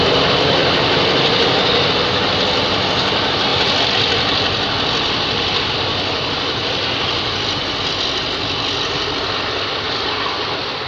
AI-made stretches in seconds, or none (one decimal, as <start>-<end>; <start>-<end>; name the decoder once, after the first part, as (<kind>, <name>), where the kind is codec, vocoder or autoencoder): none